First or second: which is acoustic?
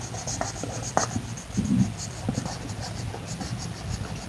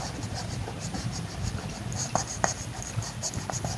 first